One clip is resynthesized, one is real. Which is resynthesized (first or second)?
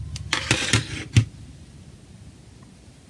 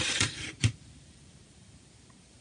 second